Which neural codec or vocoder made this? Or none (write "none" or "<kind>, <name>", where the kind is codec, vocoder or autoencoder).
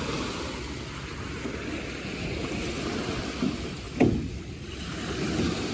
none